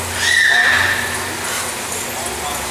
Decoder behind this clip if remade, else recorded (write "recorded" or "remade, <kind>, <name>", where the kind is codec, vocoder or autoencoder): recorded